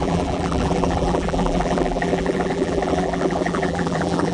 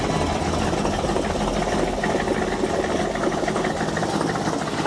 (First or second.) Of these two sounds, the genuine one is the second